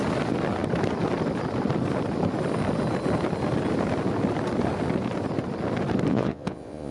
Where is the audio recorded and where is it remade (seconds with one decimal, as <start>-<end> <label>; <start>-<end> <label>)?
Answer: 0.0-6.1 recorded; 6.1-6.9 remade